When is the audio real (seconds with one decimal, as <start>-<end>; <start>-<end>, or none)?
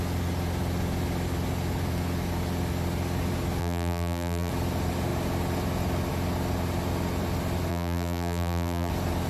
0.0-3.6; 4.5-7.7; 8.9-9.3